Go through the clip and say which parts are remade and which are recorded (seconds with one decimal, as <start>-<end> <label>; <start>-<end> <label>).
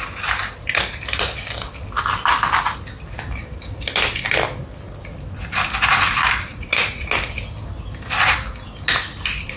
0.0-6.5 recorded; 6.5-7.1 remade; 7.1-9.6 recorded